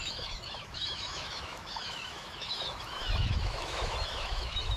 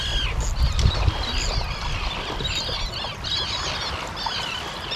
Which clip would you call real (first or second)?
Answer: second